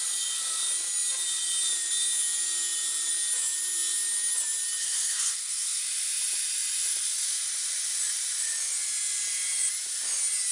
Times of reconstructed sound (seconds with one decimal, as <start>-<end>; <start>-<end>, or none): 4.8-5.8